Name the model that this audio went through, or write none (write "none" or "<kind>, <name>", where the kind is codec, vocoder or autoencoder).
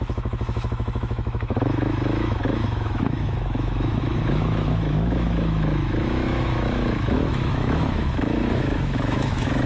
autoencoder, DAC-VAE